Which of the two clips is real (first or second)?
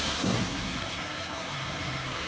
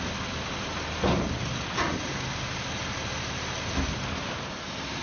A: second